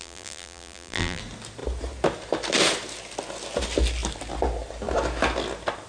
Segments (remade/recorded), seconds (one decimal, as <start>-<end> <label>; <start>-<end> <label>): 0.0-1.2 remade; 1.2-5.9 recorded